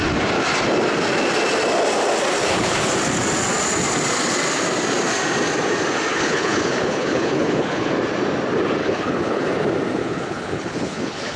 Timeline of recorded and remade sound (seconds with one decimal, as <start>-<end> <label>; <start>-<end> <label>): 0.0-2.4 recorded; 2.4-2.9 remade; 2.9-6.1 recorded; 6.1-7.9 remade; 7.9-8.8 recorded; 8.8-9.5 remade; 9.5-10.0 recorded; 10.0-11.4 remade